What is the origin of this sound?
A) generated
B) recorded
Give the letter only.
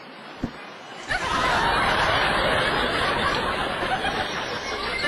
B